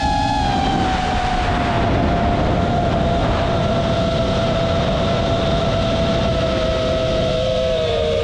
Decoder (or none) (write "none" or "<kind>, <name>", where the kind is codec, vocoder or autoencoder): none